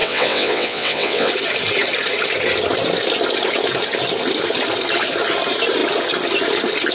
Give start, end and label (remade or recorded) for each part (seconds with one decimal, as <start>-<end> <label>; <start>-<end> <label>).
0.0-1.3 remade; 1.3-6.9 recorded